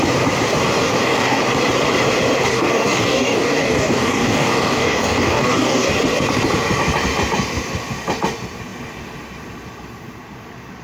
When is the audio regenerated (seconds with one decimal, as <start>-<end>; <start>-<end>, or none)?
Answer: 0.9-1.4; 2.5-5.9